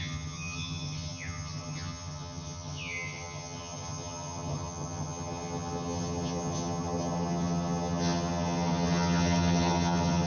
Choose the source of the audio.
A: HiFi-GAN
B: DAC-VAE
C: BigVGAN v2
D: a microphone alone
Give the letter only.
A